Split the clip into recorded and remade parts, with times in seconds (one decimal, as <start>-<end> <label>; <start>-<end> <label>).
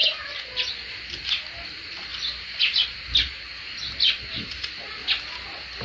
0.0-0.7 remade; 0.7-2.1 recorded; 2.1-3.0 remade; 3.0-4.3 recorded; 4.3-4.9 remade; 4.9-5.8 recorded